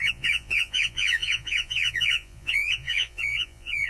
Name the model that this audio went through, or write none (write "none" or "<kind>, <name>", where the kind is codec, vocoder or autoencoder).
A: vocoder, Vocos